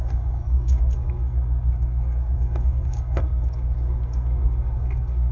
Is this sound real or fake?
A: fake